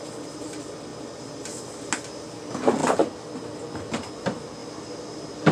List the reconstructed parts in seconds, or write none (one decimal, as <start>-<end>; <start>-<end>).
0.9-1.7; 4.6-5.5